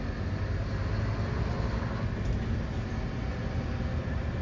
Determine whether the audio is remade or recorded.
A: recorded